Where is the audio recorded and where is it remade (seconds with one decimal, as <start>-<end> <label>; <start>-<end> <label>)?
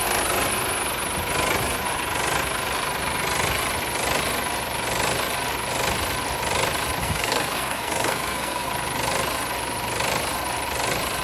0.0-7.0 recorded; 7.0-8.7 remade; 8.7-11.2 recorded